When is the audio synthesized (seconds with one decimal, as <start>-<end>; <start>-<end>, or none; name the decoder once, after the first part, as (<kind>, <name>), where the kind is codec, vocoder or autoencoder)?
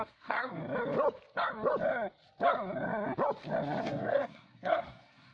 0.0-0.6 (codec, SNAC); 3.8-5.3